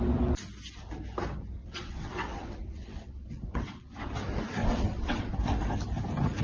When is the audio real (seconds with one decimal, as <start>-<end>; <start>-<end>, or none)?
0.0-1.6; 4.1-4.6; 5.3-6.4